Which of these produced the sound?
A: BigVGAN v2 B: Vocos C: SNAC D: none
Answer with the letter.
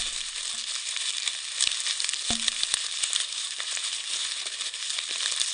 D